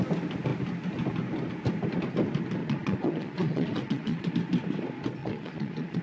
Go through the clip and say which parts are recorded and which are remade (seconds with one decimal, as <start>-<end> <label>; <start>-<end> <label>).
0.0-2.6 recorded; 2.6-4.3 remade; 4.3-5.2 recorded; 5.2-6.0 remade